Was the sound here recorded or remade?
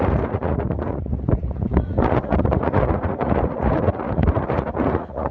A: remade